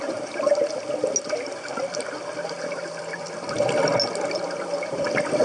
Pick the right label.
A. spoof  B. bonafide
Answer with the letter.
B